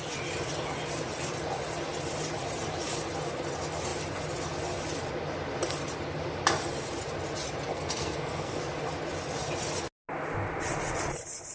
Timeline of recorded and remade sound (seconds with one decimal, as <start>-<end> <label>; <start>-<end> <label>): 0.0-7.7 recorded; 7.7-8.6 remade; 8.6-11.5 recorded